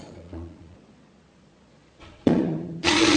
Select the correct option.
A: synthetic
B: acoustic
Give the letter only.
A